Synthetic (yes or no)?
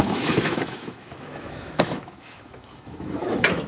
yes